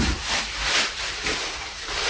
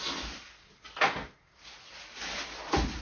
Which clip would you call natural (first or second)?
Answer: second